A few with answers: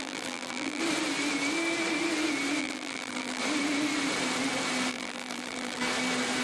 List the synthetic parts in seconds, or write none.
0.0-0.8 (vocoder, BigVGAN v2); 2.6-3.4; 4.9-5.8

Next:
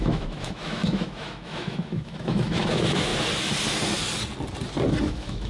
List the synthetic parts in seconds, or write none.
0.0-3.1 (autoencoder, DAC-VAE); 5.0-5.5